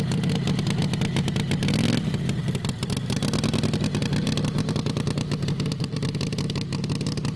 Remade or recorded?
recorded